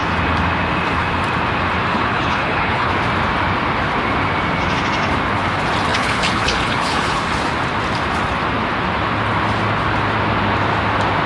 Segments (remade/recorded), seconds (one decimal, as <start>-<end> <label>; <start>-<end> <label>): 0.0-1.9 recorded; 1.9-2.9 remade; 2.9-5.9 recorded; 5.9-7.2 remade; 7.2-11.3 recorded